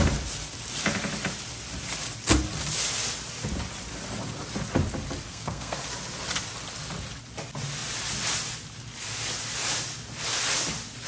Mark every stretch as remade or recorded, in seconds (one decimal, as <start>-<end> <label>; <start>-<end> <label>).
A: 0.0-5.3 recorded; 5.3-5.8 remade; 5.8-11.1 recorded